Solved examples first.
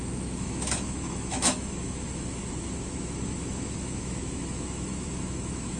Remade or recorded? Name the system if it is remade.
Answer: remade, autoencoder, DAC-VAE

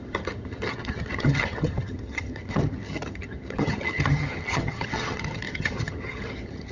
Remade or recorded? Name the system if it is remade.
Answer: remade, vocoder, HiFi-GAN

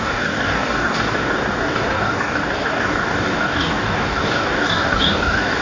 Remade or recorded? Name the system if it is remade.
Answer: remade, codec, DAC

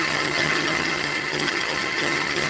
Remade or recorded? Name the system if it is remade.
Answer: remade, vocoder, HiFi-GAN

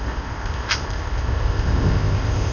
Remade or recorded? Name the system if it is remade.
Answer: remade, codec, ZipCodec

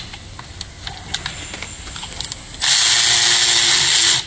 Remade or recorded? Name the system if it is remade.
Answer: recorded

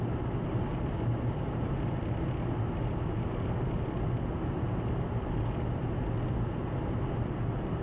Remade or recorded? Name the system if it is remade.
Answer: recorded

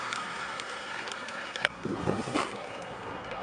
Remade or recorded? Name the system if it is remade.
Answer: remade, codec, SNAC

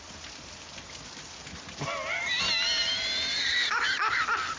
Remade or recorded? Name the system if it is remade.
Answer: recorded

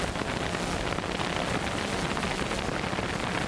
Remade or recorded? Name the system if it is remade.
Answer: recorded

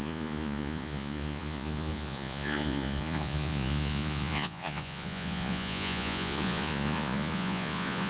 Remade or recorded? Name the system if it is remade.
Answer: remade, vocoder, Vocos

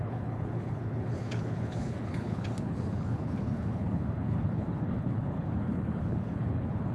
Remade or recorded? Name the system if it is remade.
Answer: remade, codec, HILCodec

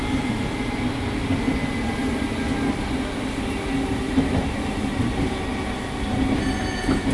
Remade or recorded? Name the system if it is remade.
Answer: recorded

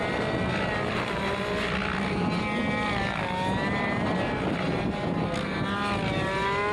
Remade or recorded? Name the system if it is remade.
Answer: recorded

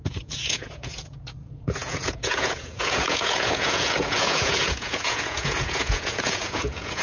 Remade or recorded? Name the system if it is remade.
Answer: remade, vocoder, Vocos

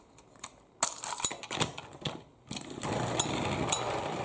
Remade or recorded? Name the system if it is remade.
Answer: recorded